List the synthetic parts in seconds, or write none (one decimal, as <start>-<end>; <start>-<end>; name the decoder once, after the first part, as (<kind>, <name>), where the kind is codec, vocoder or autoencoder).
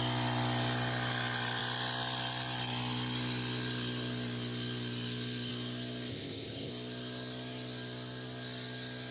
6.1-6.7 (codec, ZipCodec)